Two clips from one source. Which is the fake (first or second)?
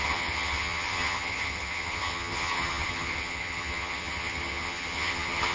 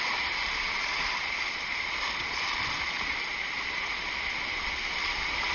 first